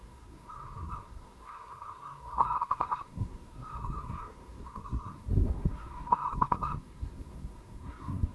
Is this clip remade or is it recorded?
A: remade